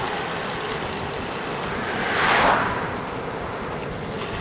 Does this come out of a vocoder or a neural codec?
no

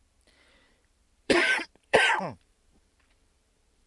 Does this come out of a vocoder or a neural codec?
yes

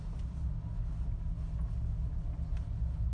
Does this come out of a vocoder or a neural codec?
no